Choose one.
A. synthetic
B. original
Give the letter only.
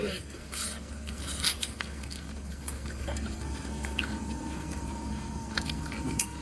A